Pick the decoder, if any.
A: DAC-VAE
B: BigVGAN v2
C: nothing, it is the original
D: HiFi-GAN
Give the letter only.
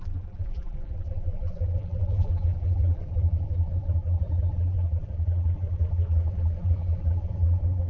B